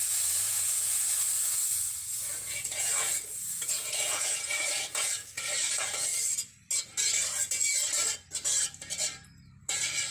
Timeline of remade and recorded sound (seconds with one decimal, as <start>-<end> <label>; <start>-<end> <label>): 0.0-6.1 remade; 6.1-9.6 recorded; 9.6-10.1 remade